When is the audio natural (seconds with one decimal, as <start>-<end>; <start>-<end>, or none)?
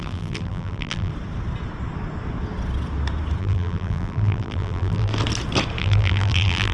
1.1-3.4; 5.1-5.8